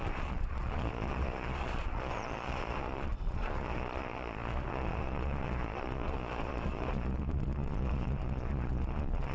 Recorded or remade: remade